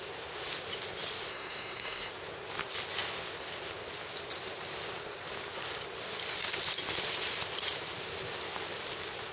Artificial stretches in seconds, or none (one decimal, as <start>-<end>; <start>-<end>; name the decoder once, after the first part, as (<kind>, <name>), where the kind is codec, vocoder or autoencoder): 1.3-2.1 (codec, SNAC)